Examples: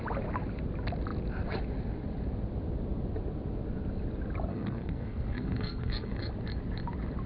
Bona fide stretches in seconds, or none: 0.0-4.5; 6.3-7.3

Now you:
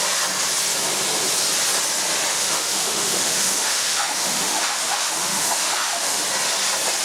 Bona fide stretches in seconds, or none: 0.0-2.3; 6.2-7.0

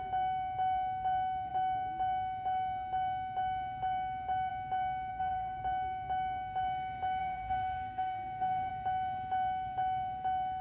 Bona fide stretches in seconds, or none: 0.0-5.1; 5.6-7.2; 8.7-10.6

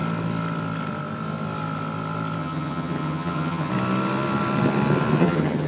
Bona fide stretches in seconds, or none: 0.0-2.4; 3.7-5.2

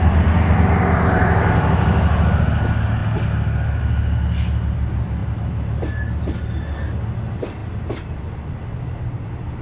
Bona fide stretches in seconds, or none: 0.0-9.6